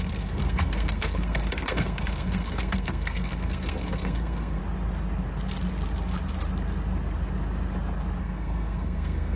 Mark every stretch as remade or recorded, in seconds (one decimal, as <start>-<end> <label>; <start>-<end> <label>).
0.0-4.6 remade; 4.6-8.2 recorded; 8.2-9.3 remade